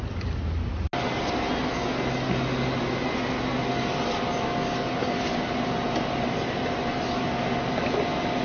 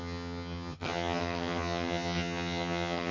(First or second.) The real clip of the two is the first